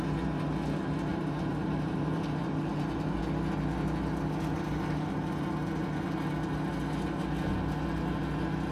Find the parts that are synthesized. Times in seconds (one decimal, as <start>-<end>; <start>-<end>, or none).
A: 1.1-3.2